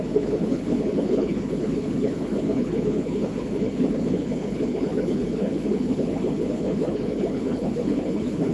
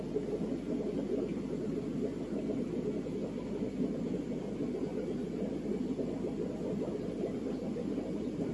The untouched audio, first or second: second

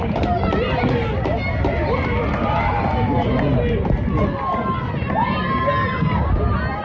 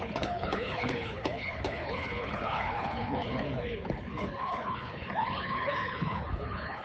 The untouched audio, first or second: first